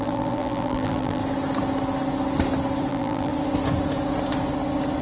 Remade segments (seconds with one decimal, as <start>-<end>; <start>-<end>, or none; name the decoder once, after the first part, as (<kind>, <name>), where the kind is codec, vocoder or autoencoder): 0.0-1.2 (vocoder, BigVGAN v2); 2.9-3.3